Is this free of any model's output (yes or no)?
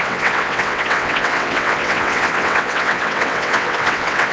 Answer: no